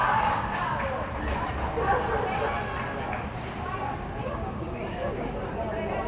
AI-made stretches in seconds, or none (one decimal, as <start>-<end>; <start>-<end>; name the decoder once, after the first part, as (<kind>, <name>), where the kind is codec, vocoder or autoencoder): 0.0-0.6 (codec, DAC); 4.2-5.5